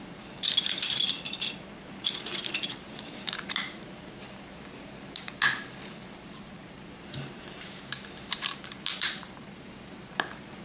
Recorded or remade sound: remade